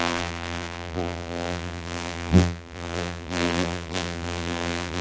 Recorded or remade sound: remade